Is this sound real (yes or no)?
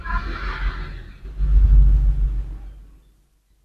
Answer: yes